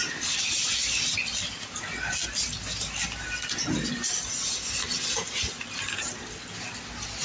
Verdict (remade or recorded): recorded